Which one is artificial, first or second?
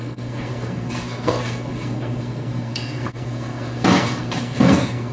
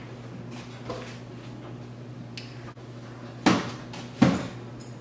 first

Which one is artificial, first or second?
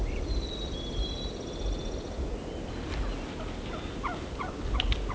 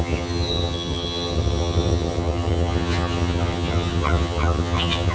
second